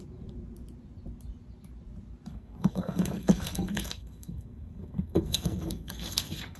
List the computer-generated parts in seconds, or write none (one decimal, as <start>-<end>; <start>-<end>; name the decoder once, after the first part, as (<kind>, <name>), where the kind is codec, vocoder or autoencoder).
2.3-6.6 (codec, SNAC)